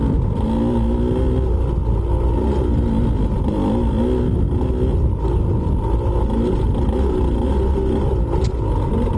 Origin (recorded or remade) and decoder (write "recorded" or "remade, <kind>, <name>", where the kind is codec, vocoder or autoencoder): recorded